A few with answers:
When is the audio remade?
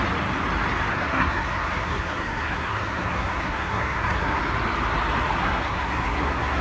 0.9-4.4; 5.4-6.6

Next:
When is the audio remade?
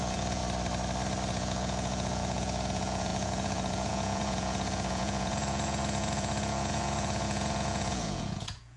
0.0-0.4; 1.3-8.8